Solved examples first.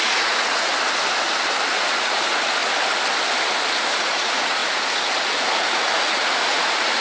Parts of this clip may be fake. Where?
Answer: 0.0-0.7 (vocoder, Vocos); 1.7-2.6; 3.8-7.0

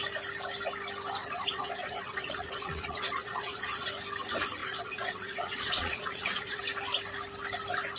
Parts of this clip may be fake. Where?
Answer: 1.2-3.9 (vocoder, Vocos); 4.6-6.6

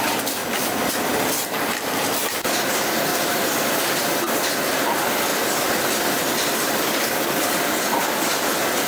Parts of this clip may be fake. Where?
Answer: 0.0-0.4 (vocoder, BigVGAN v2); 0.9-8.9